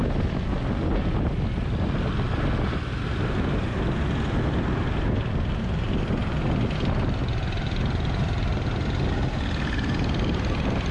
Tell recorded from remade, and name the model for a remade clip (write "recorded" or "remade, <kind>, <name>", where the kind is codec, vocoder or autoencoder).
recorded